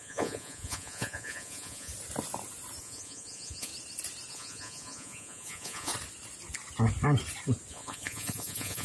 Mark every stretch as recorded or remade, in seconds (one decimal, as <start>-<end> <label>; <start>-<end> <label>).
0.0-1.9 remade; 1.9-2.8 recorded; 2.8-3.7 remade; 3.7-4.3 recorded; 4.3-5.9 remade; 5.9-7.7 recorded; 7.7-8.8 remade